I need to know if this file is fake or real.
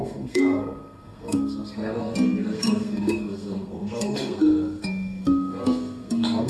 fake